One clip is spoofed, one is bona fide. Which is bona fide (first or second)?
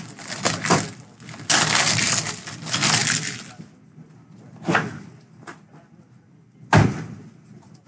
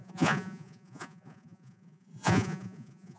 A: first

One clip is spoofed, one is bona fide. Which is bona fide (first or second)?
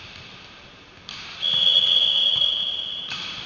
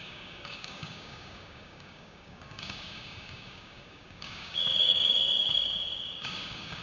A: first